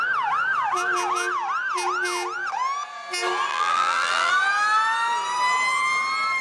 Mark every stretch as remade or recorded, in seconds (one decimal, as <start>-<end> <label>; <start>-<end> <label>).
0.0-3.5 recorded; 3.5-4.3 remade; 4.3-6.4 recorded